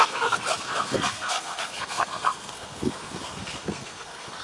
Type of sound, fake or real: fake